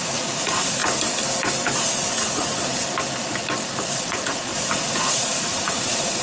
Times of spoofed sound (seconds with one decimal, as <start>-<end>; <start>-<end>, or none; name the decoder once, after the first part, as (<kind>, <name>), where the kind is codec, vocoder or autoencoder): 0.0-0.8 (vocoder, Vocos); 2.1-2.5; 4.1-6.2